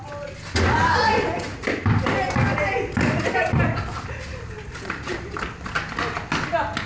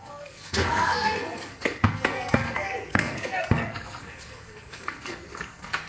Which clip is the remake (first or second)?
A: second